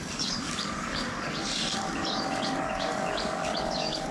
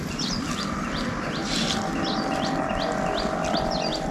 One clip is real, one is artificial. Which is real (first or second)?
second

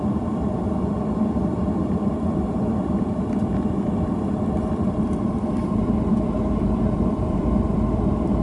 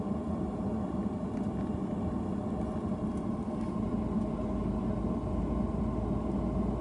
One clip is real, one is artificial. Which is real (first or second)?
second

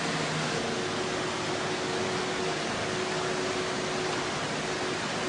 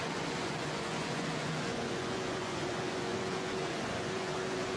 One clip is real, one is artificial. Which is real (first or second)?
first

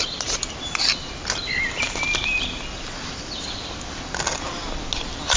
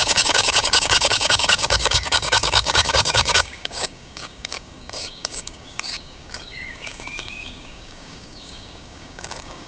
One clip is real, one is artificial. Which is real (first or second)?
first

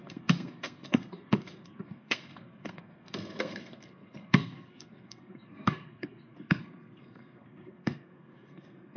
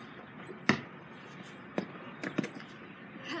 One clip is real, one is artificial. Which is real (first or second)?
second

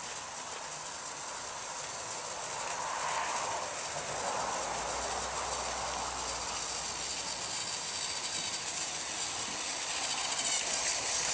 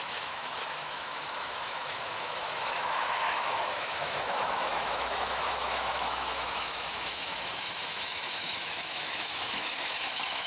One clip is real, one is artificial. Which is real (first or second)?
first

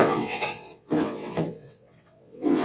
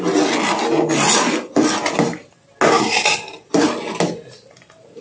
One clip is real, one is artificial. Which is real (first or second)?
second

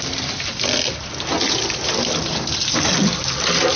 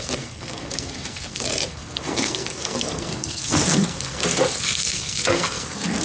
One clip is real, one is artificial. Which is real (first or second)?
first